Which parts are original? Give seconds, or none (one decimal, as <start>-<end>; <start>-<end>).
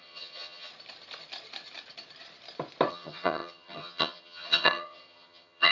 0.7-2.9